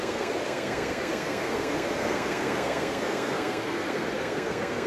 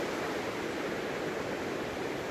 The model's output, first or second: first